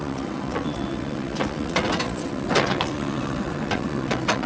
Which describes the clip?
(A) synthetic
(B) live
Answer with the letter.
A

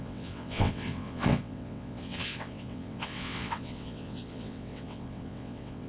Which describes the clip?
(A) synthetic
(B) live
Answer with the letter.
A